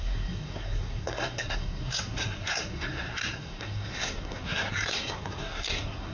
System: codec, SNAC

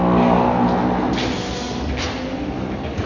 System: none